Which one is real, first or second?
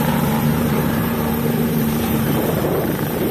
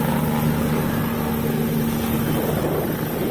second